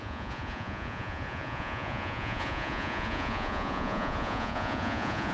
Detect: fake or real fake